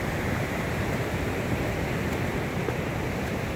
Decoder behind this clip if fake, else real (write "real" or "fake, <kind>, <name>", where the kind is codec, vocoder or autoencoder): real